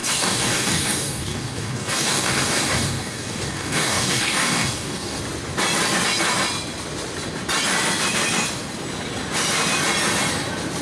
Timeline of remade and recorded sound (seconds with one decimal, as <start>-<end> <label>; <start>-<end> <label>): 0.0-5.2 remade; 5.2-10.8 recorded

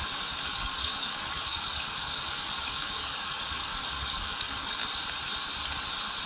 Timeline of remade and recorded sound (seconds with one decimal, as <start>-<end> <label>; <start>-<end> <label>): 0.0-4.8 remade; 4.8-6.3 recorded

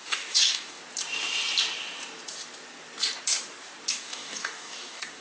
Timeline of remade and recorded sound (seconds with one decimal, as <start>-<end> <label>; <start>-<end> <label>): 0.0-0.8 remade; 0.8-3.9 recorded; 3.9-5.2 remade

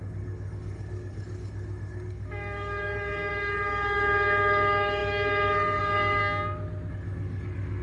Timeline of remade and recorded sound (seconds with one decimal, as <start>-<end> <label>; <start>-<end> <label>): 0.0-6.2 remade; 6.2-6.9 recorded; 6.9-7.8 remade

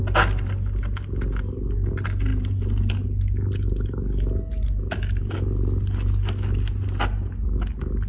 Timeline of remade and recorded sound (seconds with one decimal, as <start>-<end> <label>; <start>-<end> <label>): 0.0-8.1 recorded